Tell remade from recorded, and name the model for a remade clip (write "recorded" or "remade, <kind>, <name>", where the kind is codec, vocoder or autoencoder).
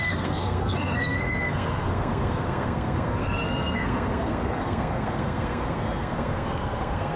remade, codec, SNAC